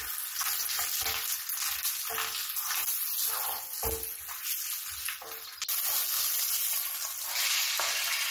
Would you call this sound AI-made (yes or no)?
no